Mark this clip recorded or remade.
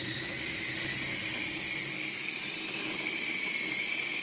recorded